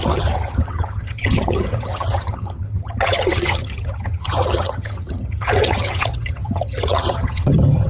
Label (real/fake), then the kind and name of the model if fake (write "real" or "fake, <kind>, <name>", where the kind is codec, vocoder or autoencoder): fake, vocoder, HiFi-GAN